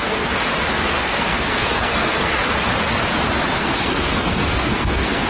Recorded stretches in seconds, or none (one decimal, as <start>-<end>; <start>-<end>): 0.4-0.9; 2.4-3.6